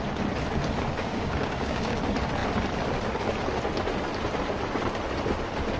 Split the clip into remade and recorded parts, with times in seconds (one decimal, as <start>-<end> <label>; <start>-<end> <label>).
0.0-1.0 recorded; 1.0-2.0 remade; 2.0-5.8 recorded